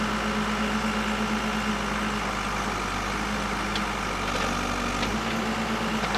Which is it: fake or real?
real